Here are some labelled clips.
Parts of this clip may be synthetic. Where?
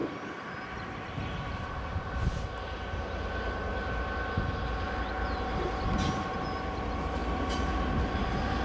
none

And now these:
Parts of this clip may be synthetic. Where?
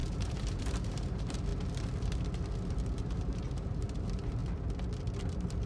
0.0-1.5 (vocoder, BigVGAN v2); 2.7-4.4; 5.2-5.7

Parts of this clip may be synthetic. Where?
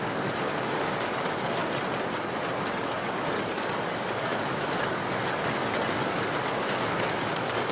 0.0-1.6 (codec, DAC); 2.5-7.7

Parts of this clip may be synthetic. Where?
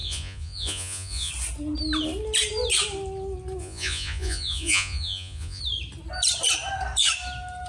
0.0-1.3 (vocoder, Vocos); 3.6-5.6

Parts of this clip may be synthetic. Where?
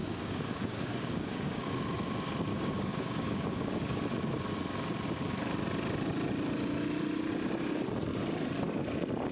0.0-1.7 (codec, DAC); 2.5-4.0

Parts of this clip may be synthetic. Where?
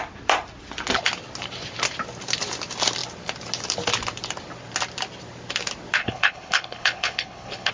6.0-7.7 (codec, HILCodec)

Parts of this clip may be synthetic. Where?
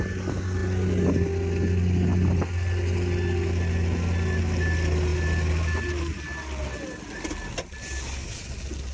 none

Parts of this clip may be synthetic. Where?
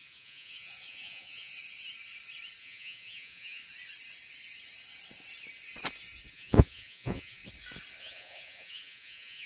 0.0-1.5 (vocoder, Vocos); 2.6-3.6; 6.3-7.4; 8.0-9.5